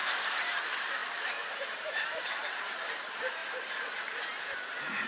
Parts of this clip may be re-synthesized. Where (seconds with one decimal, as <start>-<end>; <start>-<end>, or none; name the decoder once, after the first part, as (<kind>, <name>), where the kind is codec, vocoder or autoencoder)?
0.0-0.6 (vocoder, BigVGAN v2); 1.0-2.9